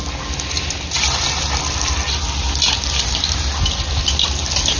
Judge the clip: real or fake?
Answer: real